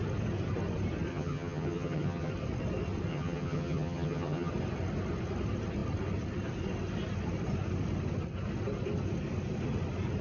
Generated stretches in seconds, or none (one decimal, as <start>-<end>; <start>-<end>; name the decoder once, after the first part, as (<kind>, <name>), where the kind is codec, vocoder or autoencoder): 1.1-2.3 (vocoder, HiFi-GAN); 3.1-4.5